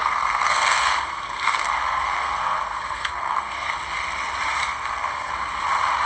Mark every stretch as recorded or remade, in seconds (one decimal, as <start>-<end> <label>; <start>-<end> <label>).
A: 0.0-3.7 remade; 3.7-4.6 recorded; 4.6-5.3 remade; 5.3-6.1 recorded